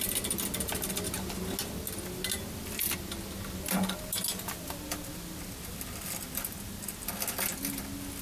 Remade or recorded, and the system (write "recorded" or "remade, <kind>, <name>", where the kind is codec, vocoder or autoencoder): recorded